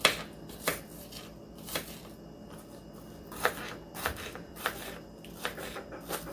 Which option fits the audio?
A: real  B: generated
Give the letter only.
A